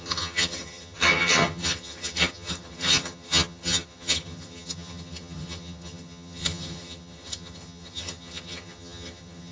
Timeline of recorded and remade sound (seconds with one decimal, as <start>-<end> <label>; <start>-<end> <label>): 0.0-9.5 remade